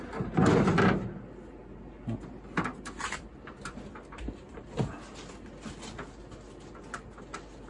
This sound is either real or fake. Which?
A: real